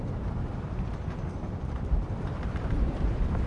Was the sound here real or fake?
fake